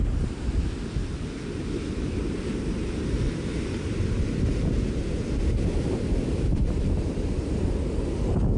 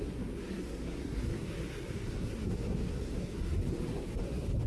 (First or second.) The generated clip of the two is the second